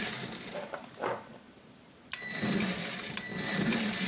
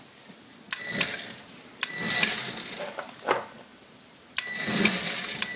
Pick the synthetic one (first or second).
first